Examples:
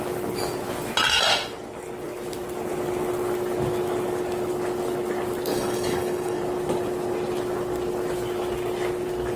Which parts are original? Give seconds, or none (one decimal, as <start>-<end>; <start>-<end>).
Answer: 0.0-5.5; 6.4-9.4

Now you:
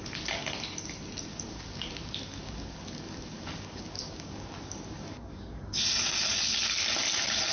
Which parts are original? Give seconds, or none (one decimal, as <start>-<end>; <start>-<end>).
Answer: 0.0-1.3; 5.8-7.5

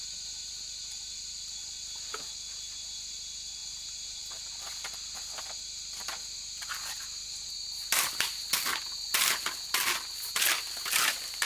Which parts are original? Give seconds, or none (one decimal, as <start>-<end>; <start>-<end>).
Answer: 0.0-11.5

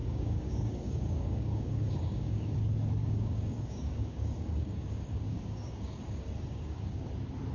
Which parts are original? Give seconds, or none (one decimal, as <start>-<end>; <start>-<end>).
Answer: 2.6-3.0; 7.0-7.5

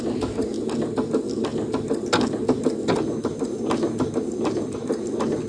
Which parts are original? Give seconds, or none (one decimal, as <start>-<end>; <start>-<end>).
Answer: 0.0-5.5

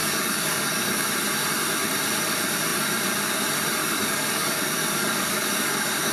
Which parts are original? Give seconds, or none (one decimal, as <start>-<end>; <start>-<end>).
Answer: 1.1-3.8